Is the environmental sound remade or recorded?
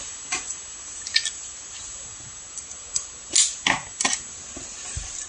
recorded